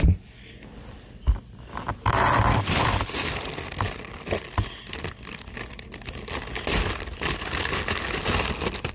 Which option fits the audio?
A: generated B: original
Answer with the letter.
B